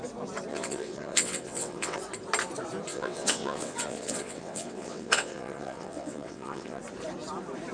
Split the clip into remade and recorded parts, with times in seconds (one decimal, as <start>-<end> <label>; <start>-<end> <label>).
0.0-0.5 recorded; 0.5-2.0 remade; 2.0-2.9 recorded; 2.9-6.8 remade; 6.8-7.7 recorded